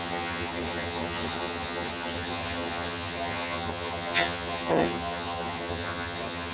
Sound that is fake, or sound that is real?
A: fake